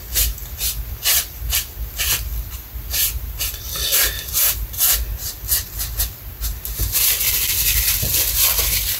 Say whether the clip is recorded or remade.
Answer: recorded